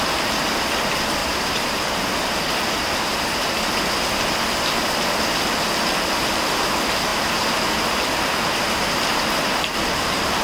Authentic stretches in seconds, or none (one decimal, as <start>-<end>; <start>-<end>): 0.0-1.2; 2.3-10.4